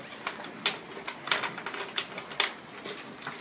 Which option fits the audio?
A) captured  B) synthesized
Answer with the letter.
A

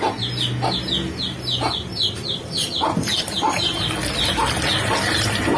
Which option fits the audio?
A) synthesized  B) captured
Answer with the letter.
B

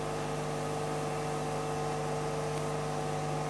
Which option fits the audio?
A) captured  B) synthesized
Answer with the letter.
A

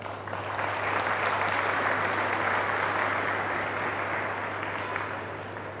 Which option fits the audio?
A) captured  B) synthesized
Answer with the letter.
A